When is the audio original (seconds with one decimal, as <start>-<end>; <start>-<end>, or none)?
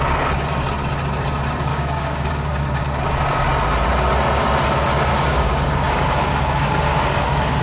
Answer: 0.0-1.7; 3.5-5.1